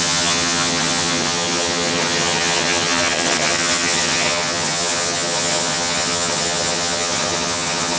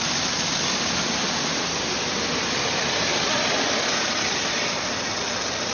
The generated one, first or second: first